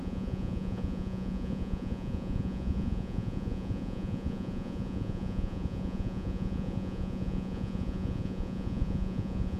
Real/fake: fake